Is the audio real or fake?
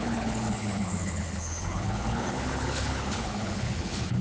fake